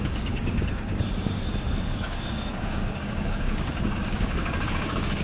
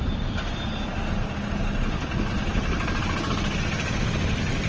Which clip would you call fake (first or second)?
first